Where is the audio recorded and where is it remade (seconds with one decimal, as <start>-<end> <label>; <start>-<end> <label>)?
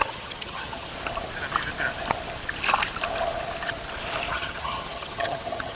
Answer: 0.0-0.9 remade; 0.9-4.3 recorded; 4.3-5.7 remade